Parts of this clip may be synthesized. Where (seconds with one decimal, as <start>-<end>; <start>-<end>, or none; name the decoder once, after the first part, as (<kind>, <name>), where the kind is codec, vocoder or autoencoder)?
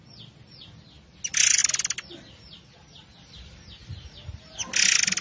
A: none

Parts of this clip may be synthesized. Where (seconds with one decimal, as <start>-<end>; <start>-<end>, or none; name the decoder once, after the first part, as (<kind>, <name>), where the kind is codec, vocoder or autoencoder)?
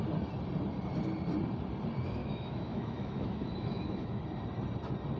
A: 2.2-4.2 (autoencoder, DAC-VAE)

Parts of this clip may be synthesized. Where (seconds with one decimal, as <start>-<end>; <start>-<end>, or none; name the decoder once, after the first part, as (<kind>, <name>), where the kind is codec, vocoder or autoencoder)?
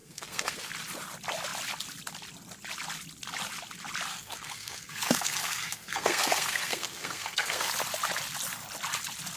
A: 0.0-0.7 (codec, SNAC); 4.1-7.7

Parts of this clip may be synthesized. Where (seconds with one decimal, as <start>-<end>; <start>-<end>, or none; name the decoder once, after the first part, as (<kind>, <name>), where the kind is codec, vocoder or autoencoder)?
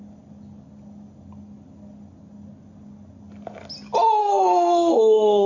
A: 4.2-5.5 (codec, SNAC)